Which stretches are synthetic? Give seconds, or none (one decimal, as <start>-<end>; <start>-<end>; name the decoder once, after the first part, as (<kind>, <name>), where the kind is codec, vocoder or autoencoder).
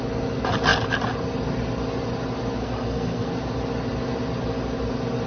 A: 2.6-3.3 (codec, SNAC)